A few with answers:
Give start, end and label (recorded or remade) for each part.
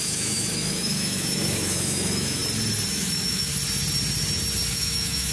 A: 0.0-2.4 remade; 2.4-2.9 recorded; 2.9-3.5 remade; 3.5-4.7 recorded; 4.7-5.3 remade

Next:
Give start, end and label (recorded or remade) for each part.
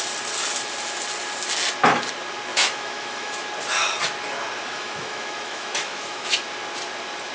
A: 0.0-2.5 recorded; 2.5-3.5 remade; 3.5-4.7 recorded; 4.7-6.4 remade; 6.4-7.3 recorded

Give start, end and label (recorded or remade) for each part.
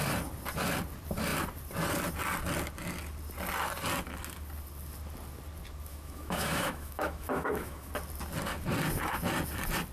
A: 0.0-5.9 recorded; 5.9-7.9 remade; 7.9-9.9 recorded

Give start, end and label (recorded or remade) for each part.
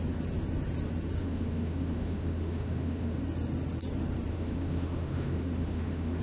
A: 0.0-1.2 recorded; 1.2-3.2 remade; 3.2-4.3 recorded; 4.3-6.2 remade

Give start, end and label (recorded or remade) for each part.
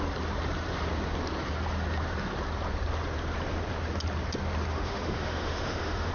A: 0.0-4.7 recorded; 4.7-6.1 remade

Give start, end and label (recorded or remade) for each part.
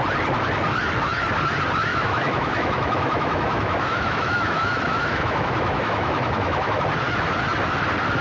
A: 0.0-1.9 recorded; 1.9-6.8 remade; 6.8-8.2 recorded